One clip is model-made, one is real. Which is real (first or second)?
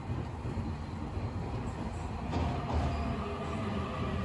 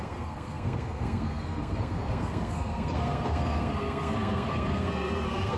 first